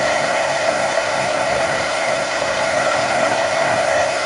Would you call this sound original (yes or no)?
no